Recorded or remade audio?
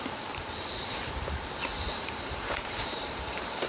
remade